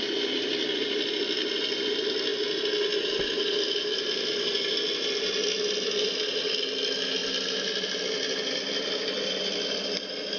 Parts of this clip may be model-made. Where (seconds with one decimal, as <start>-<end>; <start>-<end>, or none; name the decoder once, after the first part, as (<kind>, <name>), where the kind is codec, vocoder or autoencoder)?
none